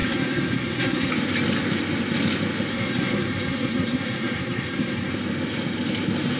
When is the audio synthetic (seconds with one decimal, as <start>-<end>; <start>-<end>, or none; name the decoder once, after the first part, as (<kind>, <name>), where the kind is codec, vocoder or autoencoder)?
0.0-1.1 (codec, SNAC); 2.7-5.1